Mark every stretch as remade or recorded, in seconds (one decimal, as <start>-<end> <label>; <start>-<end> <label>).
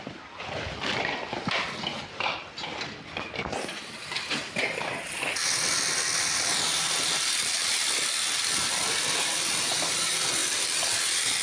0.0-11.4 recorded